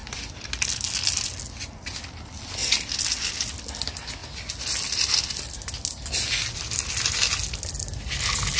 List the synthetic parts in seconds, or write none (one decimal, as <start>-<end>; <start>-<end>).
none